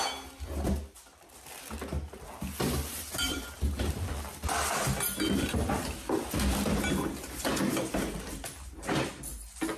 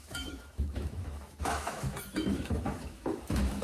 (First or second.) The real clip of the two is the first